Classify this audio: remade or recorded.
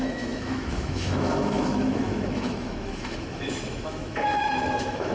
remade